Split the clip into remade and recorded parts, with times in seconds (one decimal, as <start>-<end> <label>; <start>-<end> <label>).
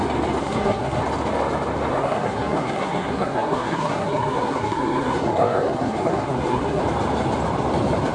0.0-0.4 recorded; 0.4-1.0 remade; 1.0-1.9 recorded; 1.9-6.8 remade; 6.8-8.1 recorded